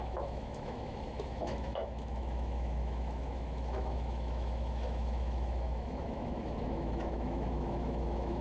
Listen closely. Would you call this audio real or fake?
fake